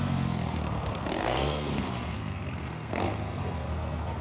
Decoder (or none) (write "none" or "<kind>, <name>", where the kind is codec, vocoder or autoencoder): codec, SNAC